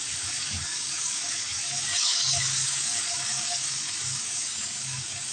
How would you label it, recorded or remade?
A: remade